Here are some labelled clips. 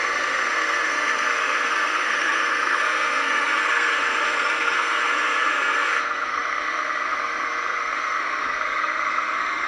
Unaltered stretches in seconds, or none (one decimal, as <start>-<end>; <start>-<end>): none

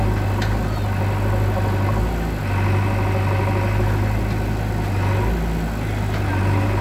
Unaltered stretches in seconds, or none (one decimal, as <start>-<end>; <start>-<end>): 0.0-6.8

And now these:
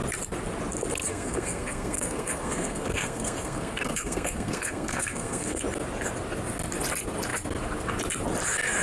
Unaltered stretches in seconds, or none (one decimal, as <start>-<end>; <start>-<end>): 0.0-1.1; 5.6-8.8

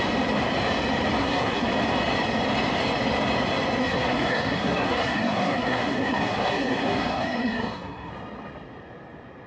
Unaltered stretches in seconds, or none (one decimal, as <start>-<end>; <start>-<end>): 0.0-1.2; 1.7-3.8; 8.1-9.5

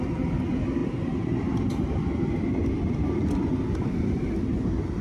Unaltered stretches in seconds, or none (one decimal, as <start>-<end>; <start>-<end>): 0.0-5.0